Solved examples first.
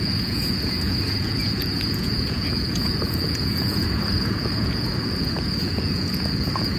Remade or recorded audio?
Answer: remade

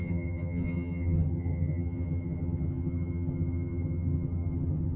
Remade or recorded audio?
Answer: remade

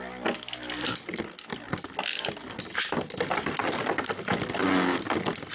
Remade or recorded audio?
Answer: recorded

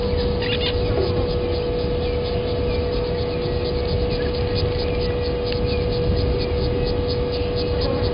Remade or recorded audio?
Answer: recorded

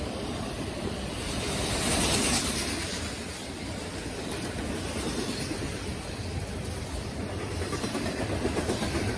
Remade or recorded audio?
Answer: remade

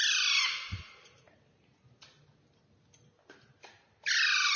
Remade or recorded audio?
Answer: recorded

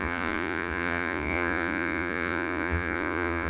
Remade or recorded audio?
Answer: remade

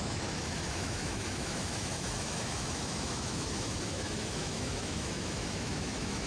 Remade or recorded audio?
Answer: remade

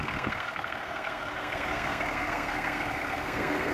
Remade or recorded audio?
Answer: remade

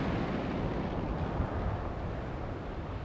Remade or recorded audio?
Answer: recorded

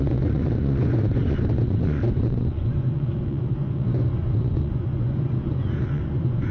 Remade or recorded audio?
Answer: remade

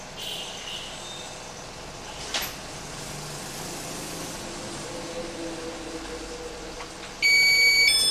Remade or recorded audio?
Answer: recorded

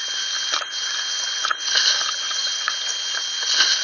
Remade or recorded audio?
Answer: recorded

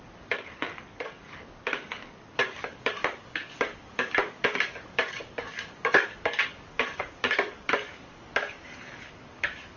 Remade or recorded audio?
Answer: remade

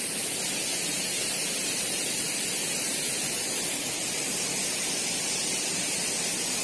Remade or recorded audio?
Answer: recorded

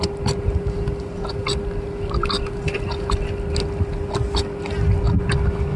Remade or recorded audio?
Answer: recorded